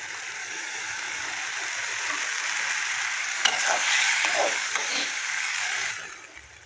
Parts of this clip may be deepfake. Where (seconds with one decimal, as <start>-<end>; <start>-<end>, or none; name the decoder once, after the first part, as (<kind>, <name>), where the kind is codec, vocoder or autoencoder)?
0.4-1.3 (codec, DAC); 3.2-5.9